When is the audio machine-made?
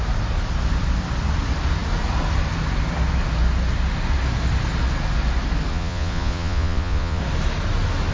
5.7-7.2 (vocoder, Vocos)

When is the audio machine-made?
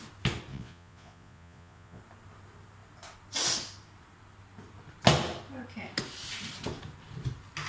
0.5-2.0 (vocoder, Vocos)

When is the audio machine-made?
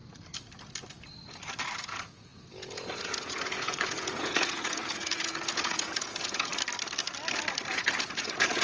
1.8-6.5 (vocoder, Vocos); 7.7-8.6